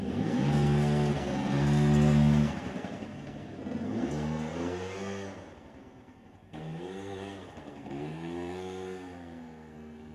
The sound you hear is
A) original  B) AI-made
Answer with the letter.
B